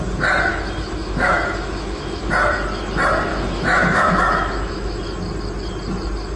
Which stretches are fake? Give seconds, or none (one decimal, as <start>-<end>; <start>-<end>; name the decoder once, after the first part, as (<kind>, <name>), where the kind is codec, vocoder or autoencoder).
0.5-2.3 (autoencoder, DAC-VAE); 3.3-5.0